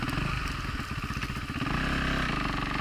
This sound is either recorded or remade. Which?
recorded